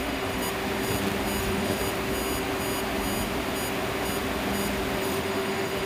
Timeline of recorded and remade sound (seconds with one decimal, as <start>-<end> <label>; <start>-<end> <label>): 0.0-0.4 remade; 0.4-1.4 recorded; 1.4-1.8 remade; 1.8-5.0 recorded; 5.0-5.9 remade